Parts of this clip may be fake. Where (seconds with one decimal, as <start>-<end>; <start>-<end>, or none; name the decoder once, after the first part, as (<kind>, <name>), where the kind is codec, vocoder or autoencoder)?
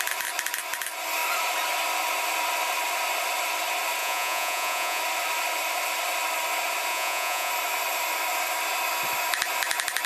4.0-5.0 (vocoder, Vocos); 6.9-7.5